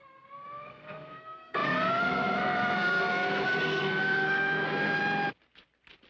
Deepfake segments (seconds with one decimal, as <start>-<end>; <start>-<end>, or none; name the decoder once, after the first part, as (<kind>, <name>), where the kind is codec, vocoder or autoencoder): 0.0-5.0 (codec, SNAC)